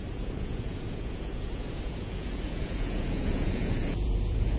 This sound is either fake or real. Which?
fake